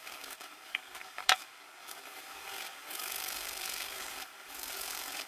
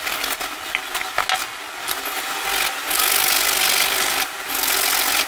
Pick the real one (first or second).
second